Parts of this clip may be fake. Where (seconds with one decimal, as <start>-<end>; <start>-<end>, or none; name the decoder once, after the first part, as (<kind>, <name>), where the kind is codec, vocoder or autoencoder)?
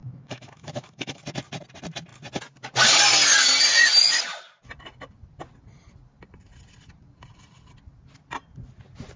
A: 0.0-1.2 (autoencoder, DAC-VAE)